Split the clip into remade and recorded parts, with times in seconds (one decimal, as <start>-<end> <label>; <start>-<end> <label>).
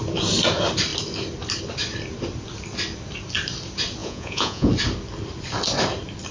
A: 0.0-4.0 recorded; 4.0-4.7 remade; 4.7-6.3 recorded